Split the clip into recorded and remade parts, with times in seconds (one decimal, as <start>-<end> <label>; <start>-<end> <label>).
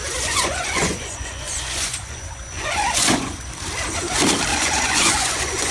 0.0-3.4 remade; 3.4-4.5 recorded; 4.5-5.7 remade